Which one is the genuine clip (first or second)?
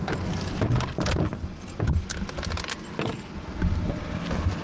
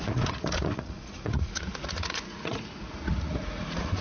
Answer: first